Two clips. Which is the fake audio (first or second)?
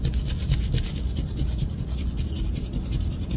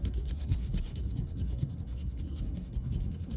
second